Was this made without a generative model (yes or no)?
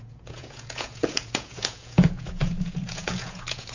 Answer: no